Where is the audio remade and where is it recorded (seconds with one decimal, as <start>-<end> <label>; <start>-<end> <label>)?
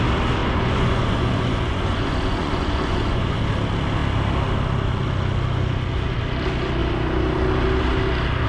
0.0-0.4 recorded; 0.4-3.4 remade; 3.4-8.5 recorded